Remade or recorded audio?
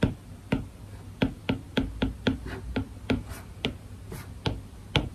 recorded